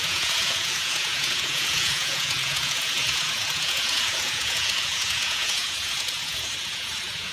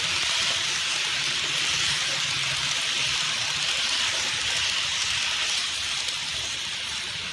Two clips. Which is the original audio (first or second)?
second